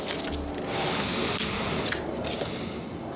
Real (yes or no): yes